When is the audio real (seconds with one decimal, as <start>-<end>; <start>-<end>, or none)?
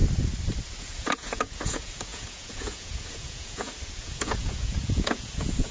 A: 0.0-0.8